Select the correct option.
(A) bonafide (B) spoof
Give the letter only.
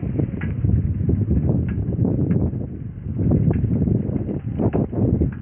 A